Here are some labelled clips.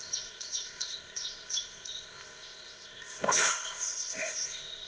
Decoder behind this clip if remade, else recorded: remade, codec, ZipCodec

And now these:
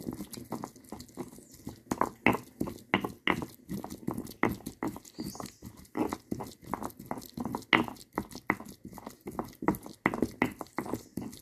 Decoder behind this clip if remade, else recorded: recorded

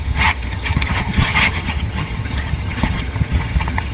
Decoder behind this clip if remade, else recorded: remade, vocoder, HiFi-GAN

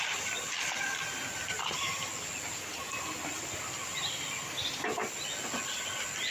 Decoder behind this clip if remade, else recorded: recorded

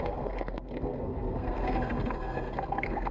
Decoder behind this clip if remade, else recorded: remade, codec, SNAC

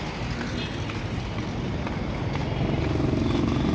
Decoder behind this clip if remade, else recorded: recorded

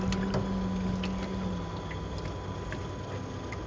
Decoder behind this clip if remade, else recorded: recorded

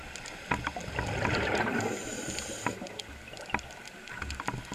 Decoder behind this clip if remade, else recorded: recorded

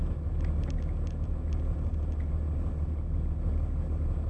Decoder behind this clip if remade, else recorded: recorded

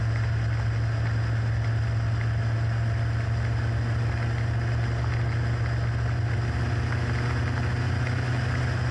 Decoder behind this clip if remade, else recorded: recorded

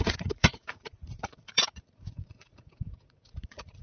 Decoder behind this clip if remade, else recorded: remade, vocoder, Vocos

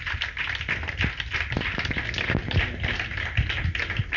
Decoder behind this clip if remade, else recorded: recorded